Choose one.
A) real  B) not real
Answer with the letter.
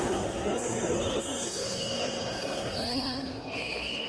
B